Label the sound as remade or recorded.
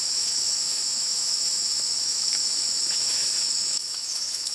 remade